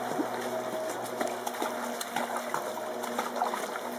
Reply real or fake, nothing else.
real